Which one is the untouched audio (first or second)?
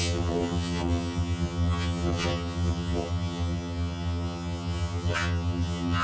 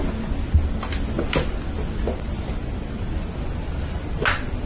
second